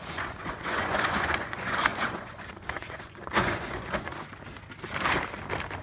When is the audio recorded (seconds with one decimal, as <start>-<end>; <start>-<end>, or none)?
4.1-5.8